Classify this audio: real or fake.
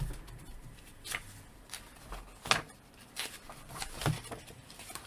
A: real